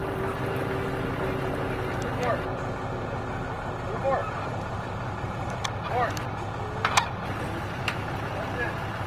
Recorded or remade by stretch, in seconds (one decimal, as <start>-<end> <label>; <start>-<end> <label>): 0.0-9.1 recorded